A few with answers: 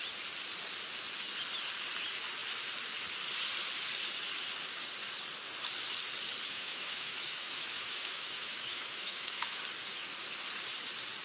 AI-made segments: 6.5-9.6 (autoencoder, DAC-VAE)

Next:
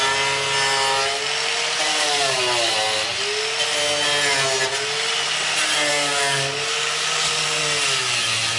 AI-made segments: 1.9-2.4 (codec, DAC); 5.9-7.6